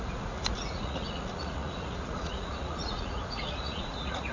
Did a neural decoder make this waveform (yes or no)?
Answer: yes